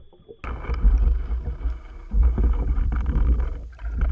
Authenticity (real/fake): real